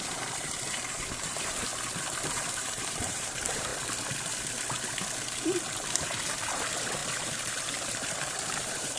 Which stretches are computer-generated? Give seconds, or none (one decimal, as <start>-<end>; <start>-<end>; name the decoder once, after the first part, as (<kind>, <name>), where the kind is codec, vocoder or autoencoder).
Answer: 0.0-1.7 (vocoder, BigVGAN v2); 2.5-3.7; 5.6-9.0